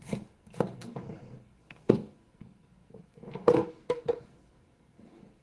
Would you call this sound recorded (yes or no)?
no